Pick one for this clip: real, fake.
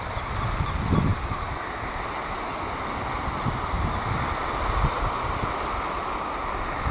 real